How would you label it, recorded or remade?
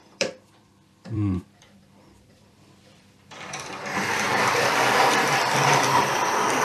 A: remade